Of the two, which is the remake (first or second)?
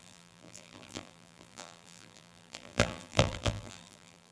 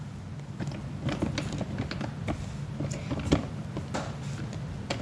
first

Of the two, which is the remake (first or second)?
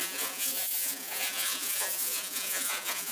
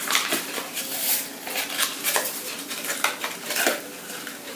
first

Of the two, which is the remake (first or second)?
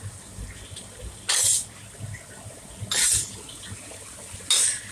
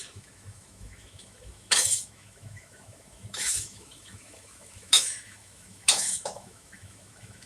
second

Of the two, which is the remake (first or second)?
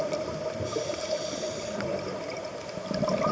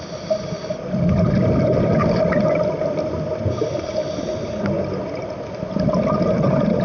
first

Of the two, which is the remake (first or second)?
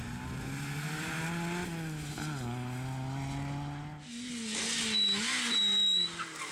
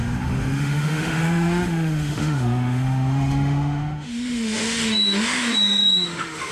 second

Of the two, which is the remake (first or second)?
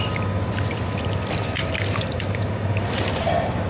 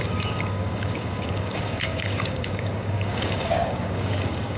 second